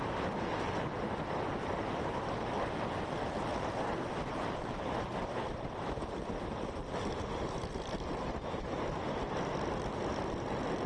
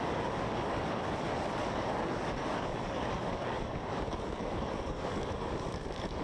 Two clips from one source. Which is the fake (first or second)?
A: second